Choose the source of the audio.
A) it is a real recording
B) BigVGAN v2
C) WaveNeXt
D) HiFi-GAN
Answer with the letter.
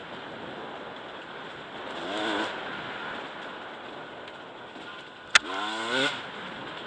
A